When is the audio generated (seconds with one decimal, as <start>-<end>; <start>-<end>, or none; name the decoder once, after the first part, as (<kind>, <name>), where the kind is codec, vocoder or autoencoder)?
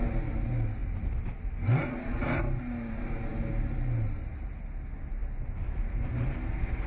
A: none